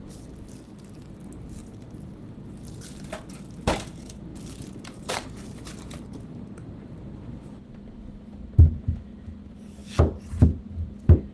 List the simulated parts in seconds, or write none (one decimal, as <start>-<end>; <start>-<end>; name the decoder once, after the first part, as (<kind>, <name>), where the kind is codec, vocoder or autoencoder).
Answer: 4.3-5.7 (vocoder, BigVGAN v2)